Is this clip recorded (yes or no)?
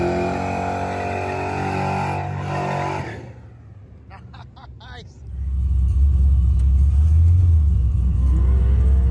yes